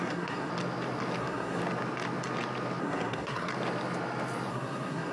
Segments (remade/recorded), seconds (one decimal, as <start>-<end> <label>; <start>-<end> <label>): 0.0-0.5 remade; 0.5-1.2 recorded; 1.2-1.6 remade; 1.6-2.8 recorded; 2.8-3.5 remade; 3.5-4.5 recorded; 4.5-5.1 remade

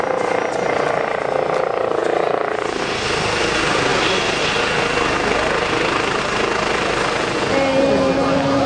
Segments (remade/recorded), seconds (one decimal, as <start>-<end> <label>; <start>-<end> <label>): 0.0-8.7 recorded

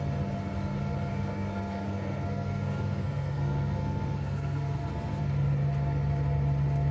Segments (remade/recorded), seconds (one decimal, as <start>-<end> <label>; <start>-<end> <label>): 0.0-1.1 recorded; 1.1-5.2 remade; 5.2-6.9 recorded